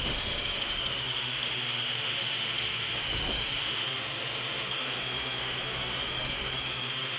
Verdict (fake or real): fake